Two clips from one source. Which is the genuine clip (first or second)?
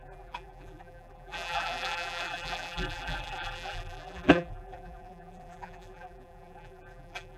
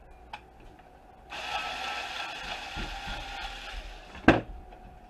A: second